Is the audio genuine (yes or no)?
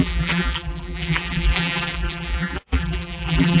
no